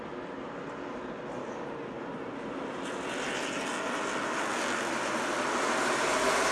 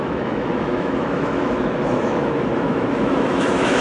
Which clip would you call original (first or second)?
first